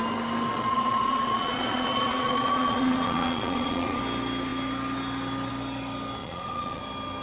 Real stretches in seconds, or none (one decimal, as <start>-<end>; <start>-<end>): 0.0-0.5; 4.0-6.2; 6.8-7.2